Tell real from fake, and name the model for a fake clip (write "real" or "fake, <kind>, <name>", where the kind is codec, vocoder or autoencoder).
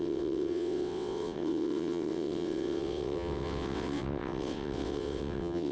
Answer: fake, vocoder, WaveNeXt